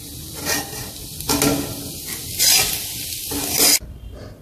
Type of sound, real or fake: real